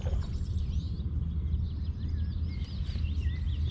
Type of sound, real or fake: real